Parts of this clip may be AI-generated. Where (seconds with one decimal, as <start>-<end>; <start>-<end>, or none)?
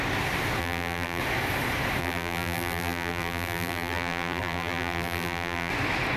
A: 0.6-1.2; 2.0-5.7